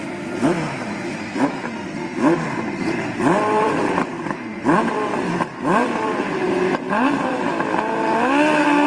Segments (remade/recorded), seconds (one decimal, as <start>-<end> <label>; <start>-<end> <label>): 0.0-7.5 remade; 7.5-8.9 recorded